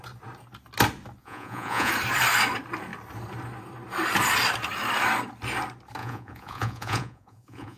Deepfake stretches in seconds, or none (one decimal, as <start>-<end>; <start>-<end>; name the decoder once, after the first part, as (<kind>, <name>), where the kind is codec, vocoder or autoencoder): 1.2-1.9 (vocoder, Vocos); 6.0-7.8